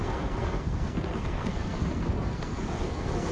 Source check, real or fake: fake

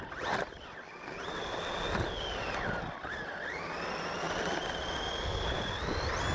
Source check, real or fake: real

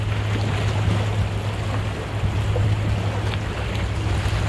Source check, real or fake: real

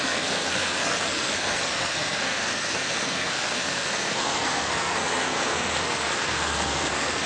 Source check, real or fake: fake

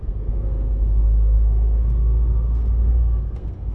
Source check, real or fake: fake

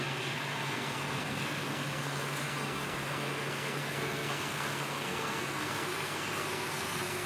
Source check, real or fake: fake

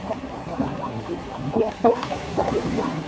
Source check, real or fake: fake